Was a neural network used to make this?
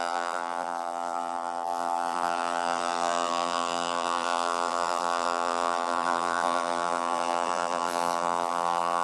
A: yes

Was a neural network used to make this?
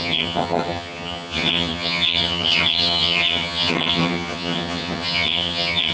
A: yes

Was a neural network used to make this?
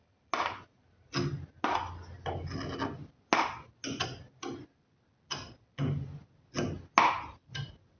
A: no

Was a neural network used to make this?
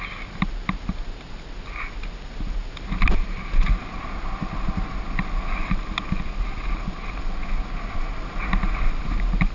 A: no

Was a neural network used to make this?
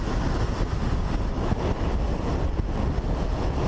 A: no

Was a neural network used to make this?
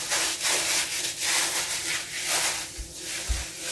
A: no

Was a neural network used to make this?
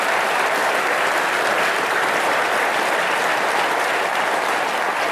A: no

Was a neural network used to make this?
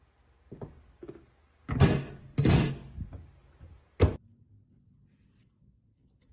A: no